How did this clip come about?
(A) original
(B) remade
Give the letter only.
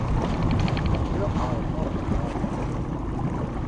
A